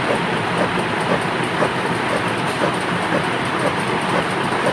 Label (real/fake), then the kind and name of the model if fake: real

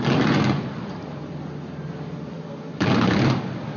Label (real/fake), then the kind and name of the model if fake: real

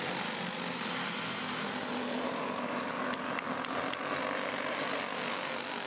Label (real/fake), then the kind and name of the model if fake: real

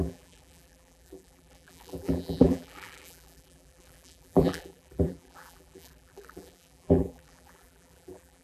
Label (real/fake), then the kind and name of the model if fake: fake, vocoder, BigVGAN v2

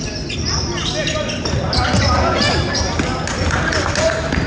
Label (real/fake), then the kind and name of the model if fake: real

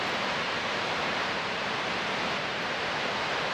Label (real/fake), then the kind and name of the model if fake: fake, vocoder, BigVGAN v2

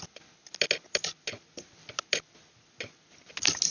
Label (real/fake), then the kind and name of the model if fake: real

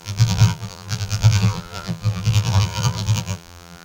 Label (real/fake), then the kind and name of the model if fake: fake, vocoder, BigVGAN v2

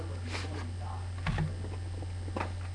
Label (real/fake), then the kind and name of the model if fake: real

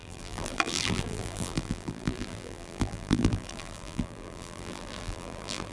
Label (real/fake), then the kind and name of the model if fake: fake, vocoder, BigVGAN v2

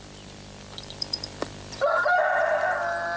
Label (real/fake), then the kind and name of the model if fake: fake, vocoder, BigVGAN v2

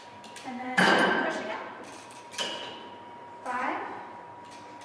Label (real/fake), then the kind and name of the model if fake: fake, vocoder, BigVGAN v2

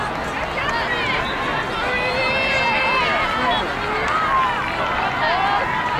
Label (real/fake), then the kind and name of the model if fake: real